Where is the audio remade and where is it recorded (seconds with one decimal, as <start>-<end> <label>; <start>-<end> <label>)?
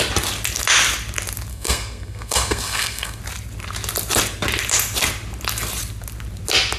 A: 0.0-1.5 recorded; 1.5-3.2 remade; 3.2-6.8 recorded